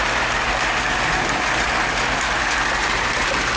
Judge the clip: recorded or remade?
recorded